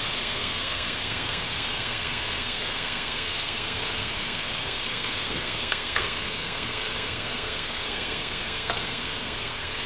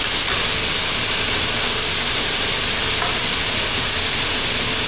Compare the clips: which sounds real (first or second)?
second